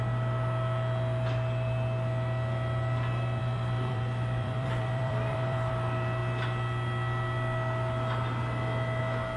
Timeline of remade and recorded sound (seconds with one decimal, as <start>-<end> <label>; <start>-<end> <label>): 0.0-3.4 recorded; 3.4-5.7 remade; 5.7-9.4 recorded